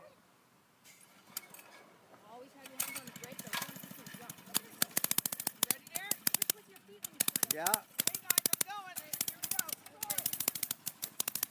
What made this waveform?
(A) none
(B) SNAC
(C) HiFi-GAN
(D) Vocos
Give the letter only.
A